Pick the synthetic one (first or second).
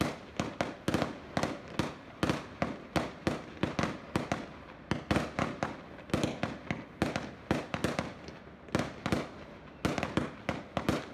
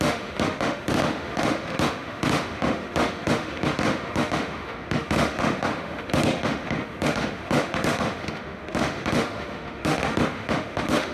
second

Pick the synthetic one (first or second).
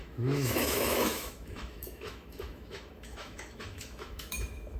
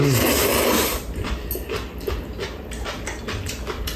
first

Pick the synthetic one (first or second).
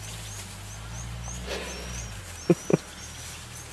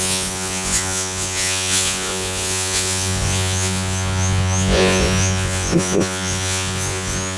second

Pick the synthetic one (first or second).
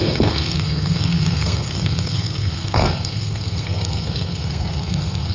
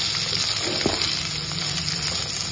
first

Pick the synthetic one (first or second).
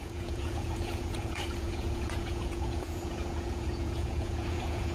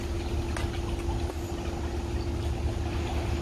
first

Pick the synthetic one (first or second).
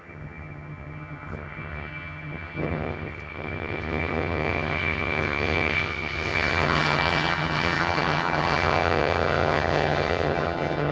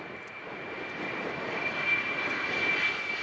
first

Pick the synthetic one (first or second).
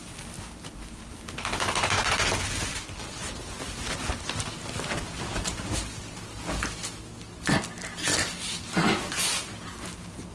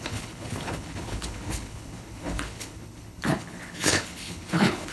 second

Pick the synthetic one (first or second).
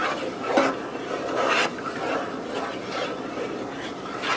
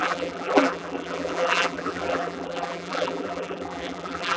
second